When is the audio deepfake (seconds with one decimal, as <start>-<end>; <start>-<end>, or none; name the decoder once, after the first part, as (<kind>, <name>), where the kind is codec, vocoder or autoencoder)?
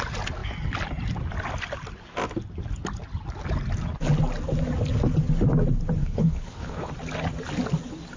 6.0-6.9 (codec, HILCodec)